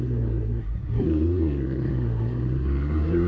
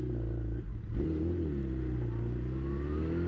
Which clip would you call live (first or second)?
second